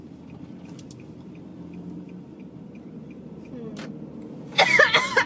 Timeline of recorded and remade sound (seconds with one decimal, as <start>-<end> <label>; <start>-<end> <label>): 0.0-3.7 remade; 3.7-4.4 recorded; 4.4-5.3 remade